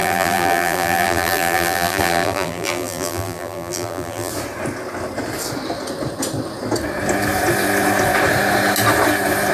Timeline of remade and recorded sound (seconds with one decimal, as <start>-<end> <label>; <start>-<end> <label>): 0.0-4.3 remade; 4.3-9.5 recorded